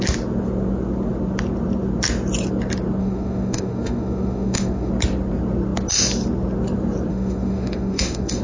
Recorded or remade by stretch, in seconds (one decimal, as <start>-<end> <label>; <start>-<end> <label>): 0.0-3.0 recorded; 3.0-4.9 remade; 4.9-7.1 recorded; 7.1-8.4 remade

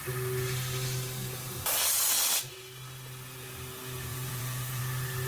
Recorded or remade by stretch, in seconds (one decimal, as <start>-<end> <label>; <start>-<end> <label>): 0.0-4.1 recorded; 4.1-4.8 remade; 4.8-5.3 recorded

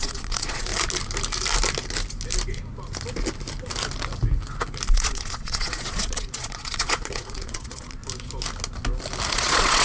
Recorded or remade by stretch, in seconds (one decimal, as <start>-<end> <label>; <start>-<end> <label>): 0.0-0.7 remade; 0.7-4.9 recorded; 4.9-8.0 remade; 8.0-9.3 recorded; 9.3-9.8 remade

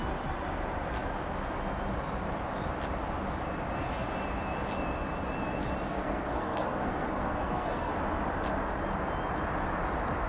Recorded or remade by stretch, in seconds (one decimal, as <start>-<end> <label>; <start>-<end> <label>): 0.0-5.9 recorded; 5.9-7.9 remade; 7.9-10.3 recorded

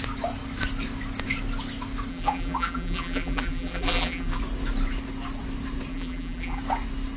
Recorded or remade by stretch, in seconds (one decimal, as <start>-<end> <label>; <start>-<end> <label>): 0.0-2.1 recorded; 2.1-4.4 remade; 4.4-5.9 recorded; 5.9-6.6 remade; 6.6-7.2 recorded

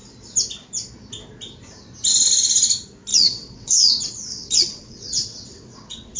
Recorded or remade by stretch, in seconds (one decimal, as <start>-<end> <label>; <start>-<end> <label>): 0.0-3.1 recorded; 3.1-3.9 remade; 3.9-4.3 recorded; 4.3-6.2 remade

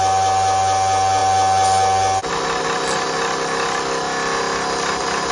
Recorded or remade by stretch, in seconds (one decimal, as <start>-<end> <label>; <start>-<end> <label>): 0.0-5.3 recorded

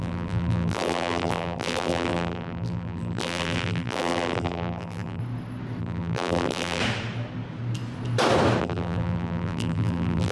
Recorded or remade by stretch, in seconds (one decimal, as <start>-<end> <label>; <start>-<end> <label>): 0.0-5.2 remade; 5.2-5.8 recorded; 5.8-6.8 remade; 6.8-8.6 recorded; 8.6-10.3 remade